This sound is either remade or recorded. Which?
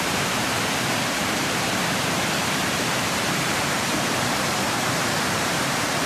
remade